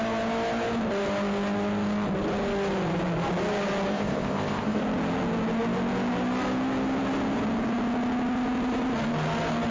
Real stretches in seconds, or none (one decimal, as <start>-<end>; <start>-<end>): 0.0-3.9; 4.8-9.7